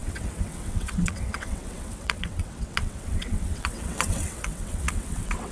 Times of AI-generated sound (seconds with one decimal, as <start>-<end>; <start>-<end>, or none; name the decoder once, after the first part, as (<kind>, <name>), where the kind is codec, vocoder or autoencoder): 0.0-5.5 (vocoder, WaveNeXt)